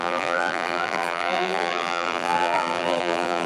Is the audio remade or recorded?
remade